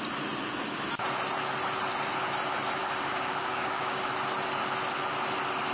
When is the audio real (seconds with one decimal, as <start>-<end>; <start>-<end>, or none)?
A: 0.0-2.8; 4.1-5.7